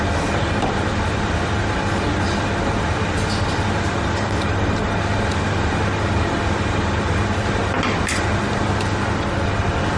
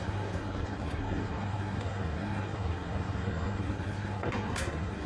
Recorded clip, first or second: first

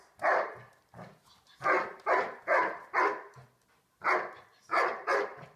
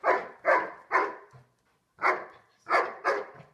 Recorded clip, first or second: first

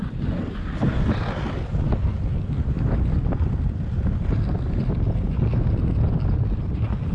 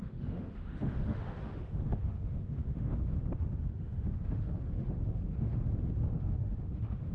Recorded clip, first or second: first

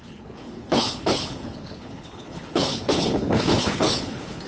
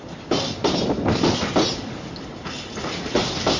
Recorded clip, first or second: second